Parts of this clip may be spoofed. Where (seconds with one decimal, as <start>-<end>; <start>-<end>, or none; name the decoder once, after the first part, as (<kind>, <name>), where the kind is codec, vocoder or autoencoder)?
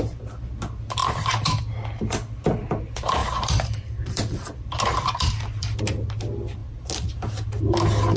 1.0-1.6 (vocoder, BigVGAN v2); 3.2-5.8